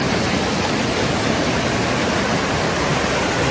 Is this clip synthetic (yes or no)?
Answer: no